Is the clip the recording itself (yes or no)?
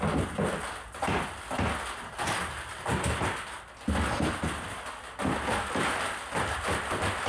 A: yes